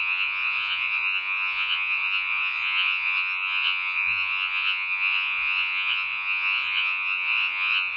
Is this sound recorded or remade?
remade